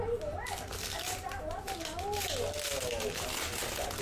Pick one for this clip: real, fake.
real